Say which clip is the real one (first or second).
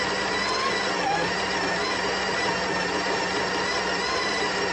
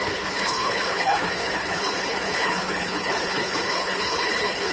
first